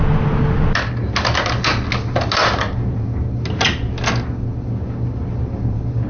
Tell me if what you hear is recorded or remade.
recorded